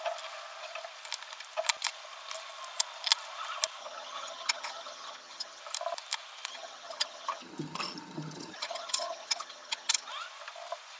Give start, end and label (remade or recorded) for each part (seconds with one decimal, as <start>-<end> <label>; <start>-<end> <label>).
0.0-3.8 recorded; 3.8-5.6 remade; 5.6-6.5 recorded; 6.5-10.1 remade; 10.1-11.0 recorded